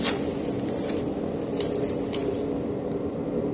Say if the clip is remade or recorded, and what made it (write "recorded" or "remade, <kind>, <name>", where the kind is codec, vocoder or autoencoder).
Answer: recorded